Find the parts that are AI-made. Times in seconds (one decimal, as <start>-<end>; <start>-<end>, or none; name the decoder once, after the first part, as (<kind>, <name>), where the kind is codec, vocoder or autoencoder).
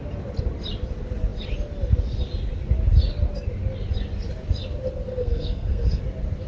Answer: 5.1-6.0 (codec, SNAC)